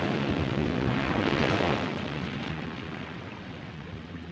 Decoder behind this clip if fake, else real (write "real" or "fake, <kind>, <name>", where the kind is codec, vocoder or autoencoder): fake, vocoder, WaveNeXt